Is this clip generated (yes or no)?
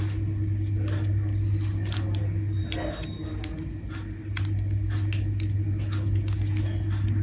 no